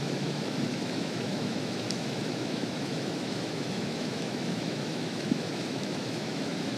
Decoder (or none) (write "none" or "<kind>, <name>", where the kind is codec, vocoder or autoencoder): autoencoder, DAC-VAE